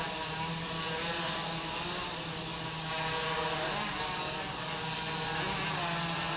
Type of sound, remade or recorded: recorded